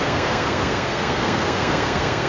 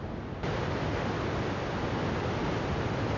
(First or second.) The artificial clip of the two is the first